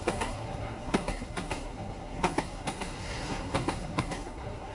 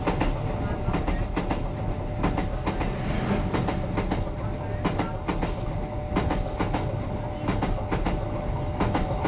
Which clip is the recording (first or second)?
second